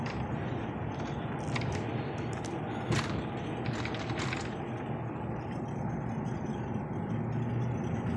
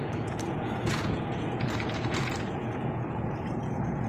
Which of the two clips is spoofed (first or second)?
second